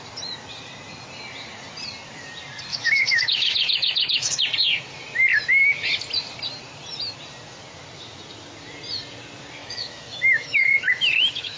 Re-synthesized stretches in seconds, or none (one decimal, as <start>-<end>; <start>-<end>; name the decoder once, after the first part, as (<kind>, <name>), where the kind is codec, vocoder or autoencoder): 2.7-4.4 (autoencoder, DAC-VAE); 9.6-11.6